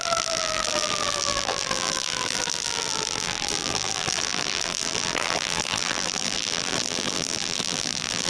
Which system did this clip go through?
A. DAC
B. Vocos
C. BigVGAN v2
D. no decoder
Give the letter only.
C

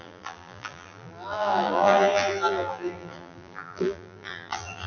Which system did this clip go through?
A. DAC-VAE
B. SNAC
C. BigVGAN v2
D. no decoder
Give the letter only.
C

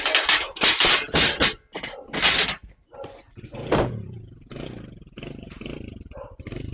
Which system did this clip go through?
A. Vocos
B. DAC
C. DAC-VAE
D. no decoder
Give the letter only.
D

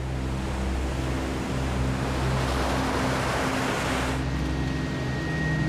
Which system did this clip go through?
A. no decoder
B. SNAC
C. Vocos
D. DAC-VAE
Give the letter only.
A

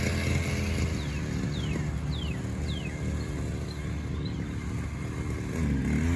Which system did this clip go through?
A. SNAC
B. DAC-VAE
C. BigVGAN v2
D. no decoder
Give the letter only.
D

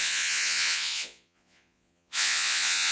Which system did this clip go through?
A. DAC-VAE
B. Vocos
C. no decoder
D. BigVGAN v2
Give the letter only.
B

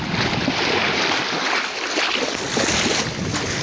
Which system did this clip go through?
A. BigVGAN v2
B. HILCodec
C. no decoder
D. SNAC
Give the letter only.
C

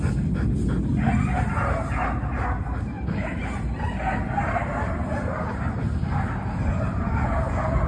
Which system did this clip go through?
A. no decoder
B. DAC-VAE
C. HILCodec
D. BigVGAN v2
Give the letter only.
A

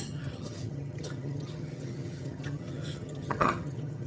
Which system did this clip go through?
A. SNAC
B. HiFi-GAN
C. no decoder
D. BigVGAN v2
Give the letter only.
B